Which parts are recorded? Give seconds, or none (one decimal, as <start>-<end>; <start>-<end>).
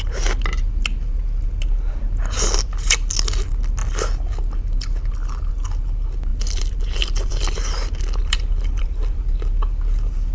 0.0-6.3; 9.2-10.3